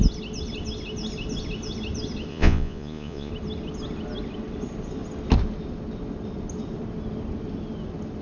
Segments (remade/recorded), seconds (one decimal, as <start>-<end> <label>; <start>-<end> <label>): 0.0-2.3 recorded; 2.3-3.3 remade; 3.3-8.2 recorded